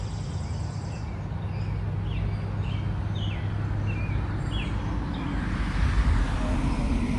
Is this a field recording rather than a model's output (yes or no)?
yes